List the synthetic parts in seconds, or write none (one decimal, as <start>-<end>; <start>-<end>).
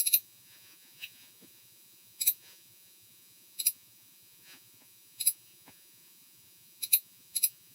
0.0-7.7